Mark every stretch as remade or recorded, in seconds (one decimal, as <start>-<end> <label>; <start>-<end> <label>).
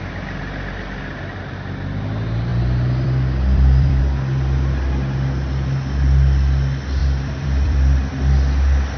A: 0.0-2.5 recorded; 2.5-4.0 remade; 4.0-7.0 recorded; 7.0-8.2 remade; 8.2-9.0 recorded